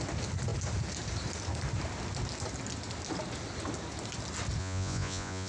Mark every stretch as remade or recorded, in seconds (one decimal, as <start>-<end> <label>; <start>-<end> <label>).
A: 0.0-4.6 recorded; 4.6-5.5 remade